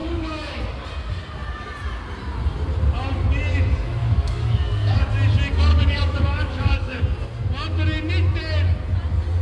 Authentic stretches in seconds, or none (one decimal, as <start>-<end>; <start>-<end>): 0.6-4.0; 5.1-5.7; 7.0-9.4